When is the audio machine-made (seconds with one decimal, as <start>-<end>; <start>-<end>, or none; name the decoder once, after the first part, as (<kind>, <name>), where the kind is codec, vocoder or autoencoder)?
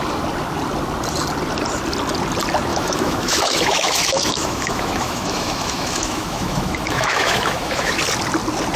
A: 2.7-7.9 (autoencoder, DAC-VAE)